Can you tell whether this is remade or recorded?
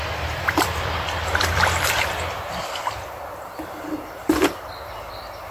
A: remade